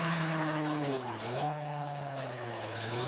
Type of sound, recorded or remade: remade